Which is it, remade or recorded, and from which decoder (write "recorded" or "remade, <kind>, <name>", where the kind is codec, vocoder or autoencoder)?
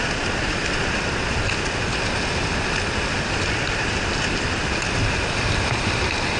recorded